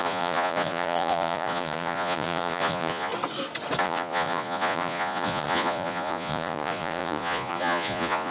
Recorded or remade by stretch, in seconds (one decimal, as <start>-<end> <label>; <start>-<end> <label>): 0.0-3.1 remade; 3.1-3.8 recorded; 3.8-8.3 remade